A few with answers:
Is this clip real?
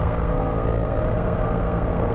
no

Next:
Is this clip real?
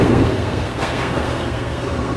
no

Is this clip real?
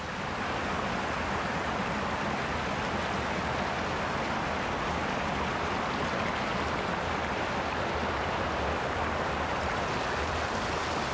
yes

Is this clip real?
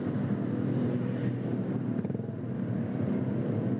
yes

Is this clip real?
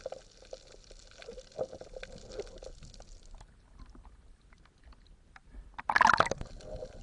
yes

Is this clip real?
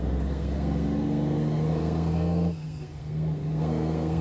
no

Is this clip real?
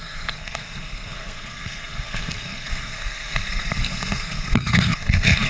no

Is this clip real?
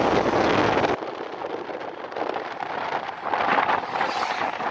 yes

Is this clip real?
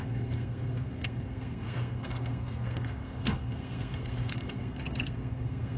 no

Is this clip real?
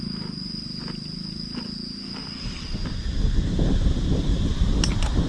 yes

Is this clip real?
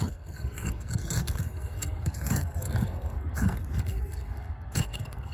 no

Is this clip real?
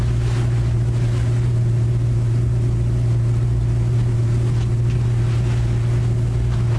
yes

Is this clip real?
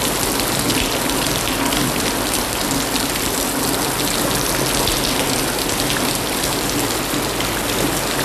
yes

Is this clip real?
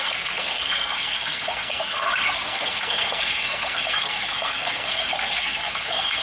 no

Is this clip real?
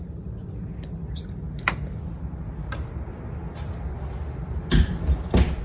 yes